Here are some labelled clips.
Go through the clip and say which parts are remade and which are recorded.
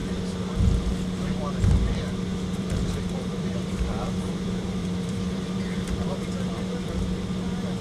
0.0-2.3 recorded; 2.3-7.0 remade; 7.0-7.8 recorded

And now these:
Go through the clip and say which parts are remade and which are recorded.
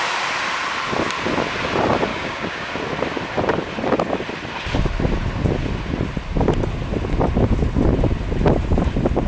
0.0-2.1 recorded; 2.1-2.7 remade; 2.7-9.3 recorded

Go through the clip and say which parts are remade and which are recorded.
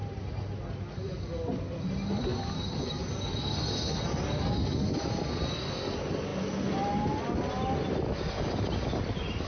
0.0-9.5 recorded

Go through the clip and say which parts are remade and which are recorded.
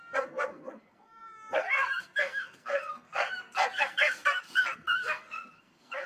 0.0-6.1 remade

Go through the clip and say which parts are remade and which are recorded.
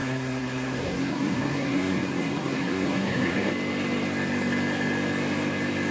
0.0-3.5 remade; 3.5-5.9 recorded